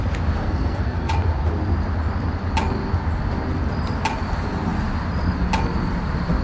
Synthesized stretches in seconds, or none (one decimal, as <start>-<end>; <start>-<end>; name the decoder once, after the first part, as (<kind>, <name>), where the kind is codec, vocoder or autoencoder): 0.4-1.1 (codec, SNAC)